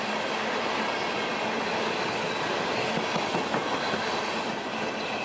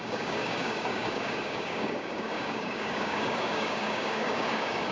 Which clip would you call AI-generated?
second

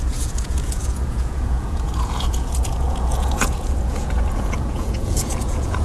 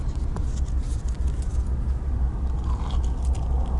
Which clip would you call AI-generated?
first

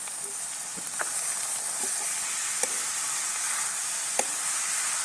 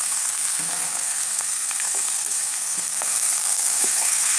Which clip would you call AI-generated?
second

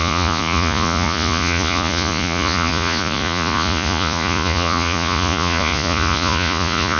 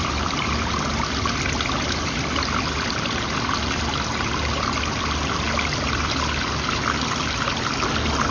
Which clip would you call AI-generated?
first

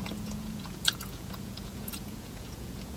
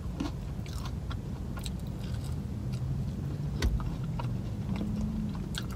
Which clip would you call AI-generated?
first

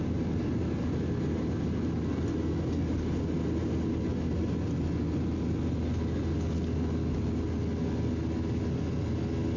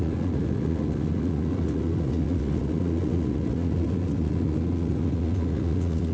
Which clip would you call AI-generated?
second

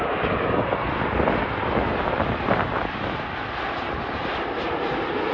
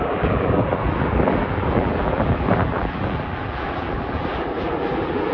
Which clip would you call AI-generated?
second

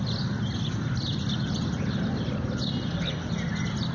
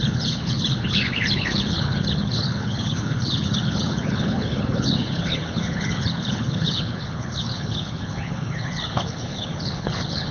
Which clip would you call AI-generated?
second